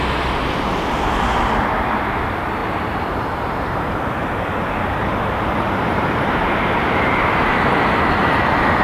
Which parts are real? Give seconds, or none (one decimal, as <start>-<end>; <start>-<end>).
0.0-2.6; 7.6-8.8